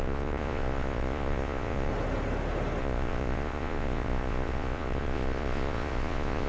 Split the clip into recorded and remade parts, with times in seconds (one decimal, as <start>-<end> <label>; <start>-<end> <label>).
0.0-1.9 remade; 1.9-2.8 recorded; 2.8-6.5 remade

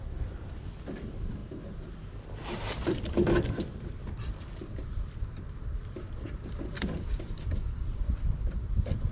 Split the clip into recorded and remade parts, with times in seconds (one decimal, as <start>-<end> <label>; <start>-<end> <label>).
0.0-9.1 remade

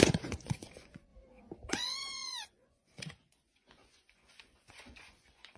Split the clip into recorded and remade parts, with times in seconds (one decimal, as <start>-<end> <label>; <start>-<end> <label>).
0.0-1.1 remade; 1.1-1.7 recorded; 1.7-5.6 remade

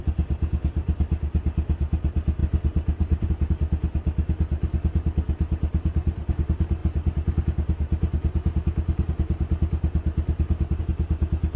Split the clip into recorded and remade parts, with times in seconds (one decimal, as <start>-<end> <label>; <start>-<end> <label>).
0.0-2.4 recorded; 2.4-3.3 remade; 3.3-11.6 recorded